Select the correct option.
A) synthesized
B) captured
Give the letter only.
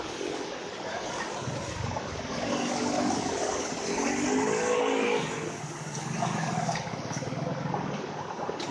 A